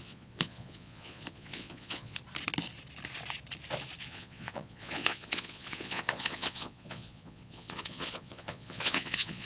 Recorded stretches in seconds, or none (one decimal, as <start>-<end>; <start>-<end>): 2.2-4.0